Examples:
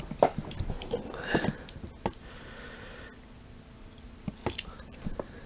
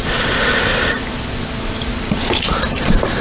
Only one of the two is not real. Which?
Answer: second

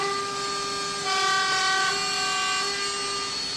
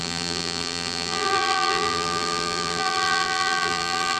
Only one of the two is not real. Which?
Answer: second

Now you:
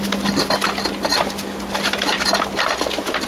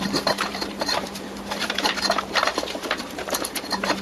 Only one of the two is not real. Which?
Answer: second